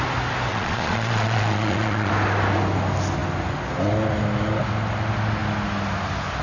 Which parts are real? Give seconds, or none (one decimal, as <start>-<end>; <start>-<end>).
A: 0.0-0.5; 2.1-6.4